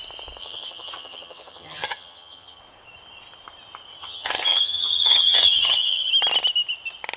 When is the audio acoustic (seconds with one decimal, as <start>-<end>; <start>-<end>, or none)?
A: 0.0-0.4; 2.6-4.0; 6.1-7.2